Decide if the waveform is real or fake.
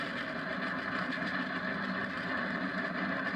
real